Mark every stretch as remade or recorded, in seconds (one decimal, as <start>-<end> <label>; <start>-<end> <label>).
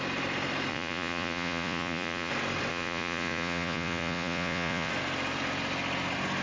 0.0-0.7 recorded; 0.7-2.3 remade; 2.3-2.7 recorded; 2.7-4.9 remade; 4.9-6.4 recorded